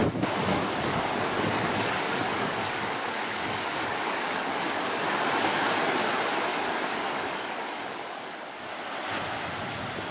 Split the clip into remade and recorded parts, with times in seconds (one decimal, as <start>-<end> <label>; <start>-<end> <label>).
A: 0.0-0.4 recorded; 0.4-5.2 remade; 5.2-6.5 recorded; 6.5-8.6 remade; 8.6-10.1 recorded